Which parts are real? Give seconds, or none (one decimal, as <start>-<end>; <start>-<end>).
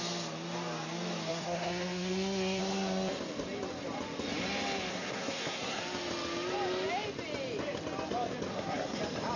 0.0-1.3; 2.6-4.9; 5.8-8.5; 9.0-9.4